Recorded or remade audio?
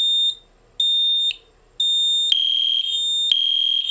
recorded